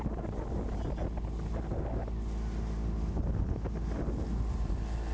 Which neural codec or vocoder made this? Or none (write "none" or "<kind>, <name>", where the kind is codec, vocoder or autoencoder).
none